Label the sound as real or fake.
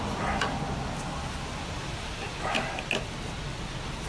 real